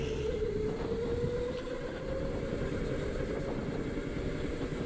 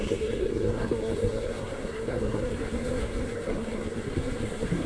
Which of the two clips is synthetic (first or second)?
second